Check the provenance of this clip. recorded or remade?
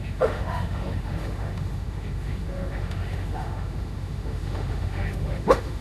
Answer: remade